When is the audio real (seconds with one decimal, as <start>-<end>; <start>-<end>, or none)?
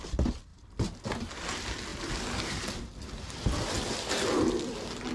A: 0.0-5.1